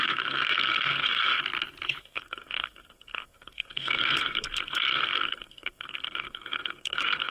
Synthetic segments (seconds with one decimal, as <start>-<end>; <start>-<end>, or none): 0.0-1.4; 2.0-7.3